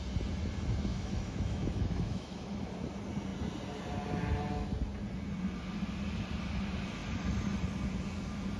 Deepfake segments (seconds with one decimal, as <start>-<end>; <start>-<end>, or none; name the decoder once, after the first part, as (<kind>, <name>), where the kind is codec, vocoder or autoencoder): 0.9-2.7 (autoencoder, DAC-VAE)